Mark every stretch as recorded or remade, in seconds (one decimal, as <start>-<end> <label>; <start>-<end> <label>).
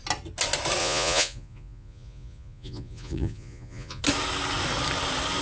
0.0-0.8 recorded; 0.8-4.0 remade; 4.0-5.4 recorded